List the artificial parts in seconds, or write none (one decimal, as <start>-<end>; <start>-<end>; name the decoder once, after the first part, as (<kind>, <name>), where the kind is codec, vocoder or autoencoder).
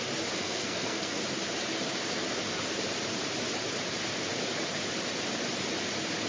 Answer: 0.4-1.2 (codec, SNAC)